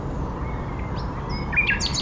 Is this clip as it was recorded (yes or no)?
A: yes